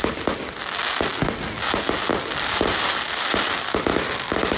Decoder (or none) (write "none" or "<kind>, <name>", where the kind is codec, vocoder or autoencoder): none